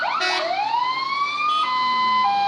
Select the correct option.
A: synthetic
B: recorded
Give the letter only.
B